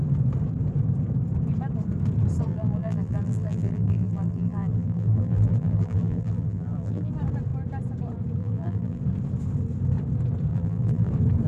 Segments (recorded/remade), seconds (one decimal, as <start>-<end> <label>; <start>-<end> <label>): 0.0-2.5 recorded; 2.5-7.1 remade; 7.1-8.4 recorded; 8.4-9.0 remade; 9.0-10.5 recorded; 10.5-11.1 remade; 11.1-11.5 recorded